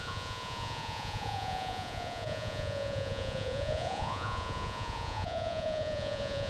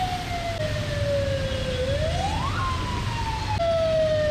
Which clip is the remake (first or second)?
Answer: first